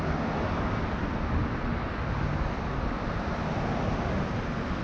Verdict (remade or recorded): recorded